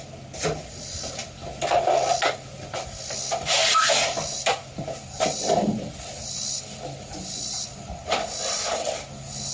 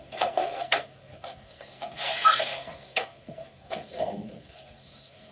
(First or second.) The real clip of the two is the first